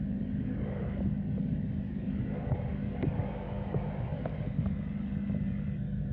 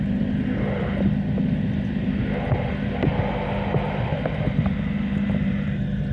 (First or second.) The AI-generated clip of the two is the first